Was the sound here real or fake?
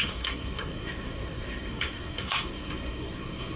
fake